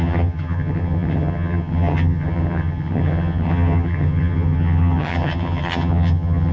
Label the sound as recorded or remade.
remade